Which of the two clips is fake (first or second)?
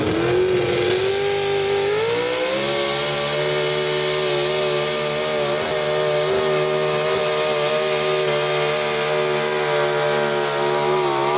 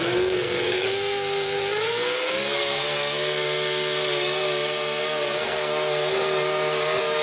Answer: second